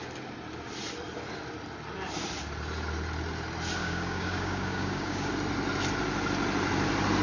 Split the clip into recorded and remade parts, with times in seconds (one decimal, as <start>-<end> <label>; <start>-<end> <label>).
0.0-3.8 recorded; 3.8-5.3 remade; 5.3-7.2 recorded